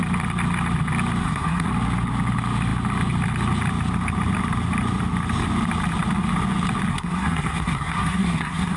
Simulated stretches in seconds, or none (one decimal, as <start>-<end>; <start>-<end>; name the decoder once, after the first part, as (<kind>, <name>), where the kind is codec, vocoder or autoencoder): 1.2-1.7 (codec, SNAC); 6.9-8.8

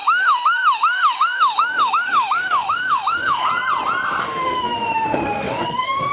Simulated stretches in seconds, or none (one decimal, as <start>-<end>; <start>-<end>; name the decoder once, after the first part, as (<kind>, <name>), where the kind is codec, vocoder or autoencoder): 0.0-3.5 (autoencoder, DAC-VAE); 4.2-6.1

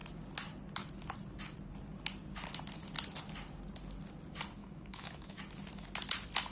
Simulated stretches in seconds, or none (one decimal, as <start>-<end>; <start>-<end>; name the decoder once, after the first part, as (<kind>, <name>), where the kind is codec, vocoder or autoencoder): 4.6-5.4 (autoencoder, DAC-VAE)

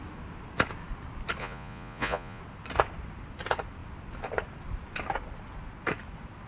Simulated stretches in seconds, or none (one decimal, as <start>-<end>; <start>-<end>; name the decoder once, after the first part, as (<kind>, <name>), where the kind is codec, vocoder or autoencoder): 1.4-2.4 (vocoder, Vocos)

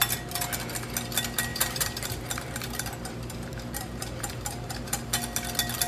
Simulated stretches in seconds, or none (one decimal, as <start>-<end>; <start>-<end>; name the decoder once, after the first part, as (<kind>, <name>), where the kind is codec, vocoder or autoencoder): 1.5-5.0 (vocoder, BigVGAN v2)